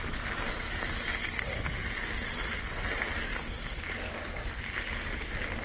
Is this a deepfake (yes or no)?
no